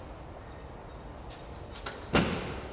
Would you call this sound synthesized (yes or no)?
no